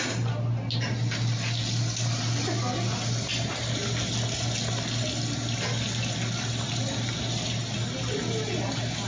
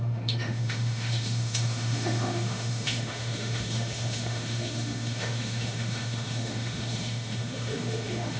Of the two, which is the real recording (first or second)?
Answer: first